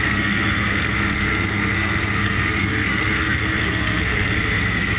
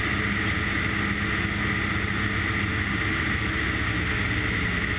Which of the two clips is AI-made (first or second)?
first